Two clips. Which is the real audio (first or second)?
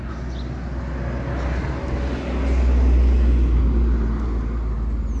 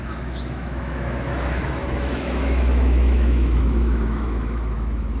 first